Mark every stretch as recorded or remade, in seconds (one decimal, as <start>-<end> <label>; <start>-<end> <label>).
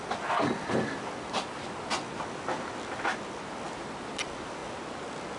0.0-5.4 recorded